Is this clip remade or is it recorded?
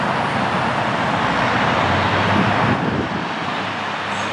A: recorded